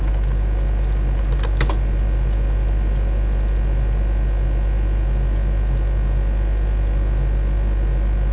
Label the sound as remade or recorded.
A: recorded